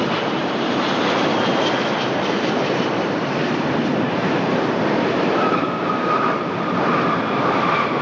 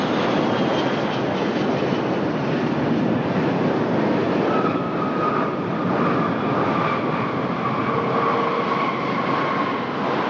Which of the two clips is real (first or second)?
second